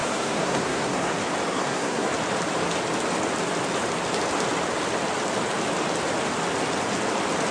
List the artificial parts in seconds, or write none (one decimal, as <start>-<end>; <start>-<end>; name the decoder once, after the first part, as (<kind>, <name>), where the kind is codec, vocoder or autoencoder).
0.0-1.1 (codec, SNAC); 1.5-2.1